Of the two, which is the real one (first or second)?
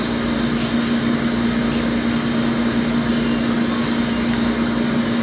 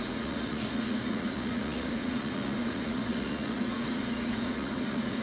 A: first